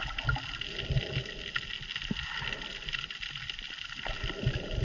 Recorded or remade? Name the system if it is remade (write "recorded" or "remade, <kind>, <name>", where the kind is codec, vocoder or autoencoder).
recorded